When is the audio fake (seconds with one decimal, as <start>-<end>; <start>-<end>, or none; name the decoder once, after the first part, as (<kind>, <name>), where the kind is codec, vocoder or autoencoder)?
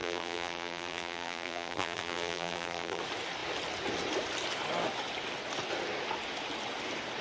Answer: 0.0-3.0 (vocoder, BigVGAN v2)